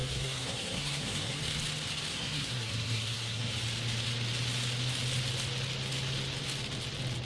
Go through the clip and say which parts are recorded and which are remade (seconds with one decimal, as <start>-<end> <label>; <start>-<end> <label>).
0.0-1.4 remade; 1.4-2.1 recorded; 2.1-3.5 remade; 3.5-7.3 recorded